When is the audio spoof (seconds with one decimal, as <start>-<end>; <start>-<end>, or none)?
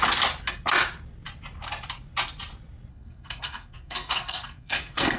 2.9-5.2